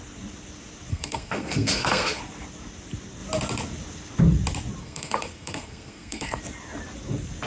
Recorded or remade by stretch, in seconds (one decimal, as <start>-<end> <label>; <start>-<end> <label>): 0.0-0.9 recorded; 0.9-2.2 remade; 2.2-4.8 recorded; 4.8-6.4 remade; 6.4-7.5 recorded

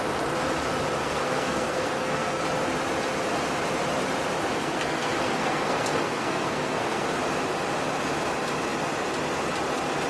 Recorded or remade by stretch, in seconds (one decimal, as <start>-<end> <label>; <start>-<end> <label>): 0.0-1.0 recorded; 1.0-2.4 remade; 2.4-4.6 recorded; 4.6-7.2 remade; 7.2-10.1 recorded

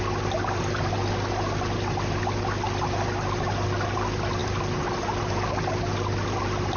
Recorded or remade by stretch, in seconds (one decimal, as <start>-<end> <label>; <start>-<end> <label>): 0.0-6.8 recorded

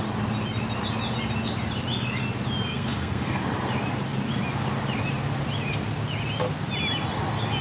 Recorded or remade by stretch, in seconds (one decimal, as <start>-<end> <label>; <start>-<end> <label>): 0.0-2.7 recorded; 2.7-3.4 remade; 3.4-7.6 recorded

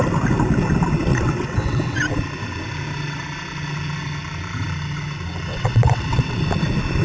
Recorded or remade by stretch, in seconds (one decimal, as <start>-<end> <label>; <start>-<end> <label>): 0.0-1.1 recorded; 1.1-2.0 remade; 2.0-5.5 recorded; 5.5-6.4 remade; 6.4-7.0 recorded

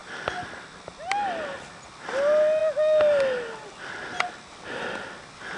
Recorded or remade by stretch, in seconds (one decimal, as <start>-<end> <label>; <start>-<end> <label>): 0.0-5.6 recorded